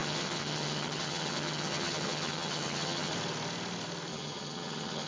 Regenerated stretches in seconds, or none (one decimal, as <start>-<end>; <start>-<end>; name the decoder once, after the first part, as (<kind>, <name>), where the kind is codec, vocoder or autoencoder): 0.0-3.1 (vocoder, HiFi-GAN); 4.1-5.1